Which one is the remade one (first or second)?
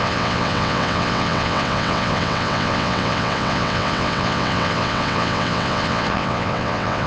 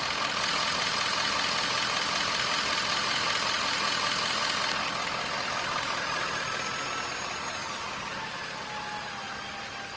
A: first